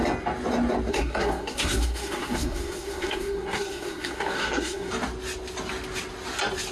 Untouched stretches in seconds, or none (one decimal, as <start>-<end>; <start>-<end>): 0.0-0.9; 4.9-6.7